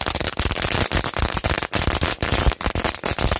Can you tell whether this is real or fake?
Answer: real